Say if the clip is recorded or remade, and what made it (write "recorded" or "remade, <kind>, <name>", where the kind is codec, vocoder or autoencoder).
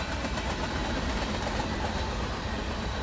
recorded